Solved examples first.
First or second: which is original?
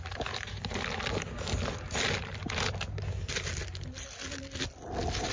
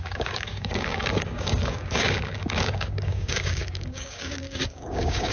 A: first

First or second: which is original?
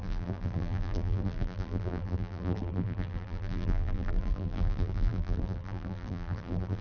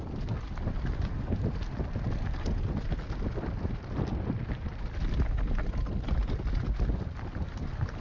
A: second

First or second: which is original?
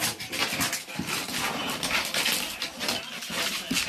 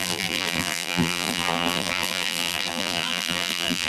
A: first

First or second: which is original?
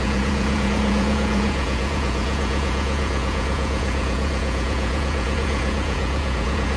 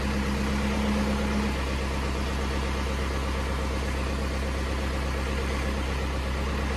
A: second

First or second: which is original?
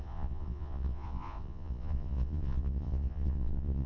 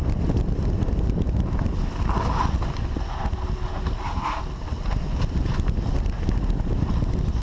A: second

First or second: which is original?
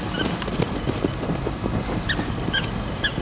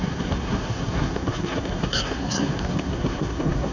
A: first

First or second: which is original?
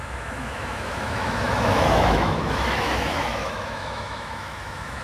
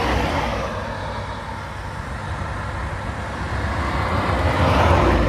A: second